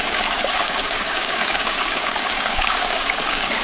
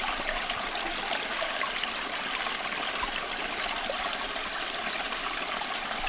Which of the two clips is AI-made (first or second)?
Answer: first